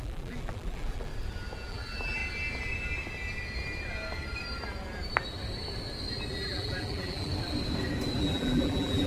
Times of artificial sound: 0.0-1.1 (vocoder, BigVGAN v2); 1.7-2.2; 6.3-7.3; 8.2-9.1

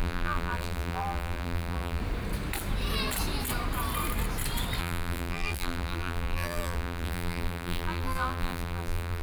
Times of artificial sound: 0.0-2.0 (vocoder, BigVGAN v2); 4.8-9.2